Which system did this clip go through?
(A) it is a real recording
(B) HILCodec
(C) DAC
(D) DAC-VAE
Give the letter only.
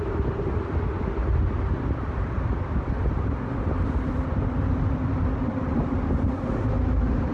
A